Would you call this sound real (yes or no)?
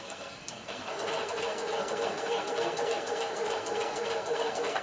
no